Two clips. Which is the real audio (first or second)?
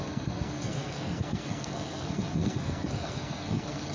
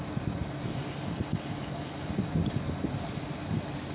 second